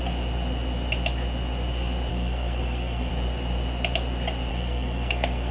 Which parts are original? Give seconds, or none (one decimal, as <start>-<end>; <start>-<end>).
0.0-2.1; 3.1-4.5